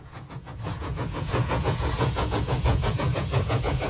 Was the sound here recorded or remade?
remade